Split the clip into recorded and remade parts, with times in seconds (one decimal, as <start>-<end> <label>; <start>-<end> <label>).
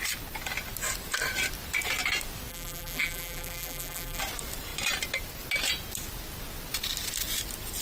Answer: 0.0-2.5 recorded; 2.5-4.2 remade; 4.2-7.8 recorded